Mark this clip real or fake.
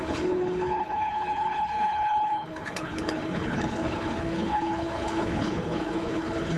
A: fake